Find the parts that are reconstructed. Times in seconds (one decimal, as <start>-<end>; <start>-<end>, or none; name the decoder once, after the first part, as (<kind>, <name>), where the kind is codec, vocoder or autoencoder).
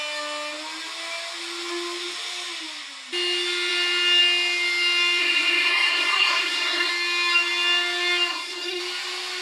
5.2-6.9 (codec, SNAC); 8.3-8.8